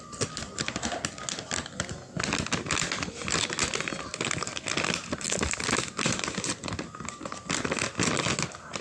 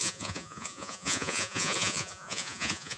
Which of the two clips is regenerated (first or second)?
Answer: second